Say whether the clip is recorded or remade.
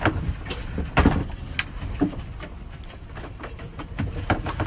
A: recorded